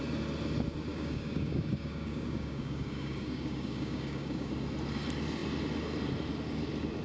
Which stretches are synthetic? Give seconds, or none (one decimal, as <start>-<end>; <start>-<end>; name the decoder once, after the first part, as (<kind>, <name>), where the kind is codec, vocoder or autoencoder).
0.9-4.5 (codec, DAC)